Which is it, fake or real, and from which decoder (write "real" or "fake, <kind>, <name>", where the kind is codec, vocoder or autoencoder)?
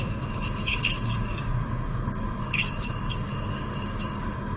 fake, codec, DAC